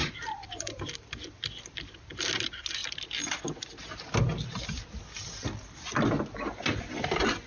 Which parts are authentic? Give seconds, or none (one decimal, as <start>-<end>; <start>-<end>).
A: 0.0-7.5